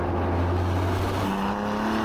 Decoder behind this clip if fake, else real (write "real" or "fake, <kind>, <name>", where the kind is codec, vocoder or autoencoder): real